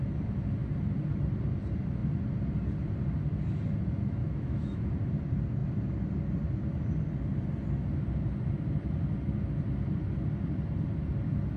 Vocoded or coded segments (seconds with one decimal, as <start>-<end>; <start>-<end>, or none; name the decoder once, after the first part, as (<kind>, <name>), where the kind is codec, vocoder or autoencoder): 4.2-4.9 (autoencoder, DAC-VAE)